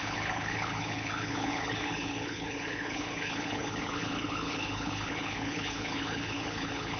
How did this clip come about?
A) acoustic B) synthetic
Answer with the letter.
B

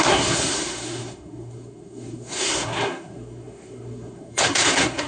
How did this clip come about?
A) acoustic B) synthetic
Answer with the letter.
B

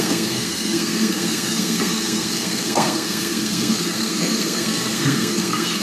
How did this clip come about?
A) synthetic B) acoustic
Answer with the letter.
A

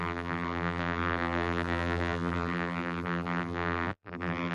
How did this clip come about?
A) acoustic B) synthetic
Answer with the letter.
B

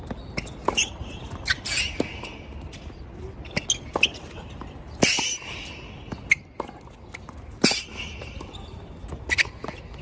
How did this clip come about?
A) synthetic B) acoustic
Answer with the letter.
B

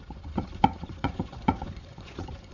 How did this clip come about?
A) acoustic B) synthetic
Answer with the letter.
B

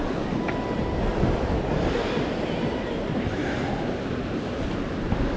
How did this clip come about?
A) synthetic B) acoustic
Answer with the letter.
B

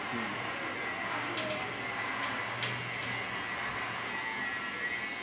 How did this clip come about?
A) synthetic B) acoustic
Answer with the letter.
B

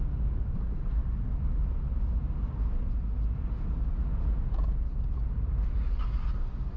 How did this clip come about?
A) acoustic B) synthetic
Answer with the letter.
A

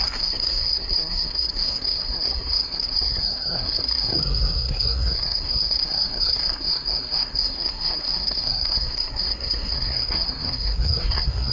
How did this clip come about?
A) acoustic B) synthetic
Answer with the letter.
B